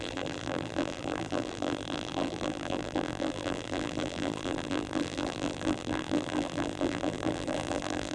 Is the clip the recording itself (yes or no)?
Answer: no